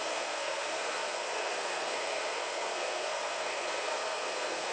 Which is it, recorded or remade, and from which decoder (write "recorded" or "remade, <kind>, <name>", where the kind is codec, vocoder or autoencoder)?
remade, codec, SNAC